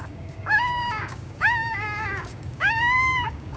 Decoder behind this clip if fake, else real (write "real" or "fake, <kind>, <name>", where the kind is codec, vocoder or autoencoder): fake, codec, DAC